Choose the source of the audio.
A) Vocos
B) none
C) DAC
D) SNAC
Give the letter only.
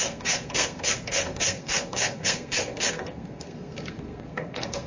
D